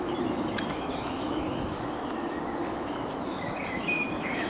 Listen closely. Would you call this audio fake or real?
fake